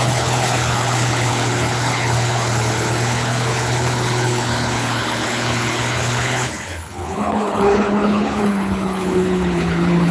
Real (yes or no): no